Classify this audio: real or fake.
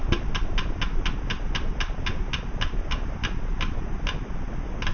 real